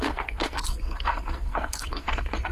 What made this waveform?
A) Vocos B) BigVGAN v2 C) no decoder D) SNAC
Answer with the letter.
D